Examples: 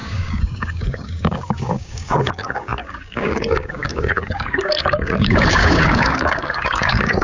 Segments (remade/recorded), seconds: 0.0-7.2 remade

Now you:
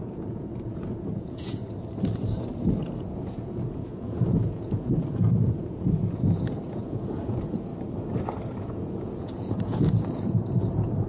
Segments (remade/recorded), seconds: 0.0-1.6 remade; 1.6-3.0 recorded; 3.0-7.7 remade; 7.7-8.6 recorded; 8.6-11.1 remade

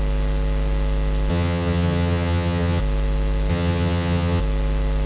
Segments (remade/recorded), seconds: 0.0-1.3 recorded; 1.3-2.8 remade; 2.8-3.5 recorded; 3.5-4.4 remade; 4.4-5.1 recorded